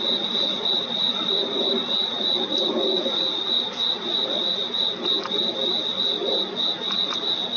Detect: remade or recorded recorded